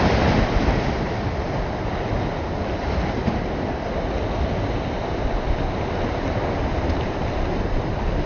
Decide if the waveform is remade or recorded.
recorded